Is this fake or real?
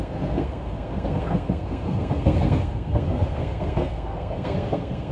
fake